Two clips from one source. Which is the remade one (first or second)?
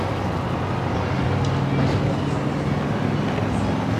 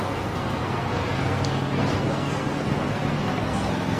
second